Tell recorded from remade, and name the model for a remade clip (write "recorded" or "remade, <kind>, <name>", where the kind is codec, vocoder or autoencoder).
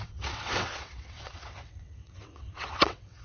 remade, vocoder, WaveNeXt